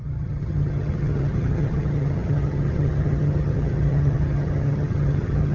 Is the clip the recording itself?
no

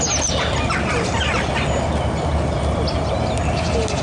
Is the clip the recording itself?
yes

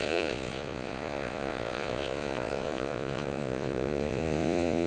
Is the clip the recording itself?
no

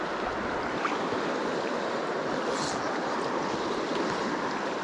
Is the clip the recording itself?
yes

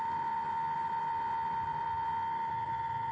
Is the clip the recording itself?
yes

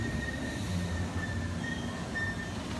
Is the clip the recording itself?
yes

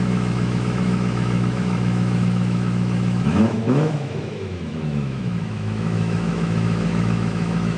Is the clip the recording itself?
no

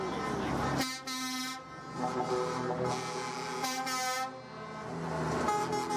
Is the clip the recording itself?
yes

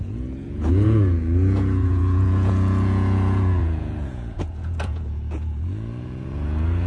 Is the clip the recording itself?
no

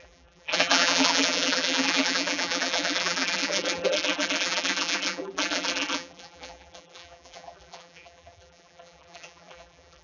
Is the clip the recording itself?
no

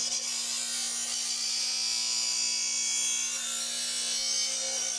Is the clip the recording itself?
yes